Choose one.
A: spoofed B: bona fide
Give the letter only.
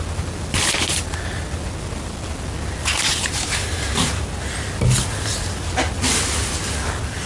B